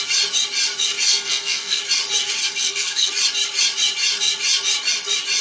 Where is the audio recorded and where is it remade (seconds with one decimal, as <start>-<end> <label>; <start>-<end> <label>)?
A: 0.0-1.1 recorded; 1.1-1.8 remade; 1.8-2.4 recorded; 2.4-3.1 remade; 3.1-5.4 recorded